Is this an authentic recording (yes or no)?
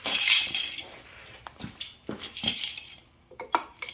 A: no